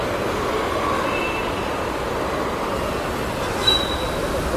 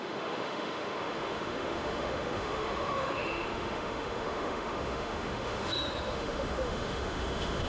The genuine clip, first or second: first